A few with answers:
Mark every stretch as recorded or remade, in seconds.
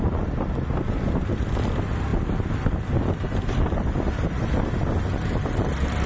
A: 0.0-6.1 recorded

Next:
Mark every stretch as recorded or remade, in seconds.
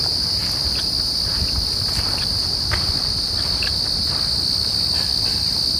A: 0.0-5.8 recorded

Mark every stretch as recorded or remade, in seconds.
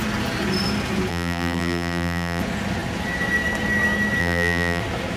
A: 0.0-1.1 recorded; 1.1-2.4 remade; 2.4-4.2 recorded; 4.2-4.8 remade; 4.8-5.2 recorded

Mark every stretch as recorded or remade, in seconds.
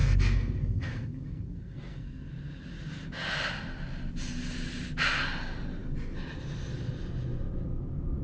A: 0.0-2.3 remade; 2.3-8.2 recorded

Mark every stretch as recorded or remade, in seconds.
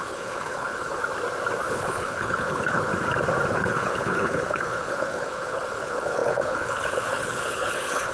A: 0.0-1.0 remade; 1.0-1.7 recorded; 1.7-2.9 remade; 2.9-3.5 recorded; 3.5-8.1 remade